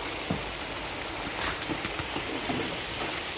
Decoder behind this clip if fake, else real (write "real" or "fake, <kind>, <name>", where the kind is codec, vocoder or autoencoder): real